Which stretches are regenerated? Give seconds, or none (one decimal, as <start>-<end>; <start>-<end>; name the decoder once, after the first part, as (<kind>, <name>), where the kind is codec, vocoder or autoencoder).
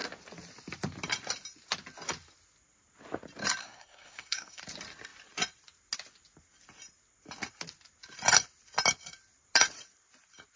3.6-4.6 (codec, SNAC)